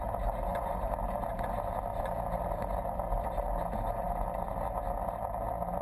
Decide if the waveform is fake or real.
real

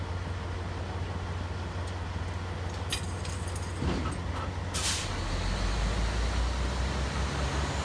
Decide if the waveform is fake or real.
real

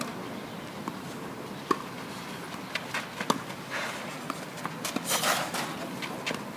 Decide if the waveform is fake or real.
real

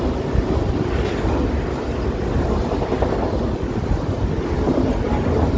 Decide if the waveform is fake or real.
real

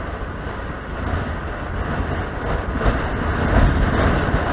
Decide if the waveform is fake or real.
real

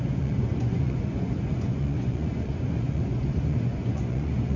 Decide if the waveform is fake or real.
fake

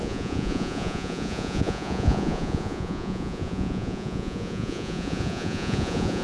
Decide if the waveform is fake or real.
fake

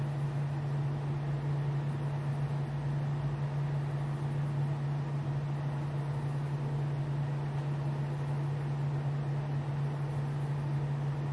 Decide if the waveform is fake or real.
real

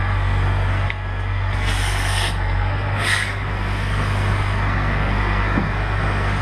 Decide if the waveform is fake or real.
fake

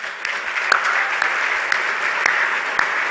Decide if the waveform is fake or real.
real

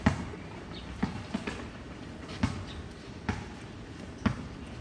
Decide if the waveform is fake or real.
real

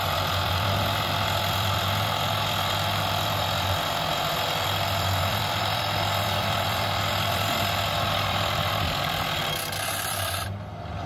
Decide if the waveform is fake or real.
fake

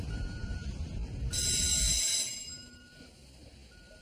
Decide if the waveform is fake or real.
fake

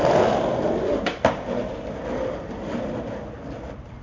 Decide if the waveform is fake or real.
real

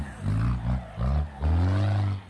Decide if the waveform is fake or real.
real